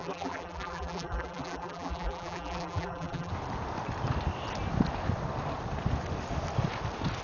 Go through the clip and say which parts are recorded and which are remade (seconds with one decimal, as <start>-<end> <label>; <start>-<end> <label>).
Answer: 0.0-3.3 remade; 3.3-7.2 recorded